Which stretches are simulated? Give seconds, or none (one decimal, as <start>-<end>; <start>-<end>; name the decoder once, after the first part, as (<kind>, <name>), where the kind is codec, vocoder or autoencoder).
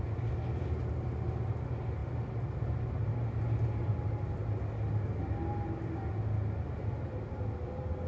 none